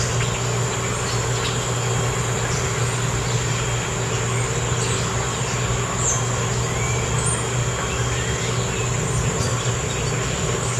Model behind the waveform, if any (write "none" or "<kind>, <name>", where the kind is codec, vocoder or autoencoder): none